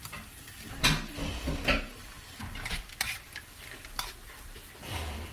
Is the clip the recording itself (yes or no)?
yes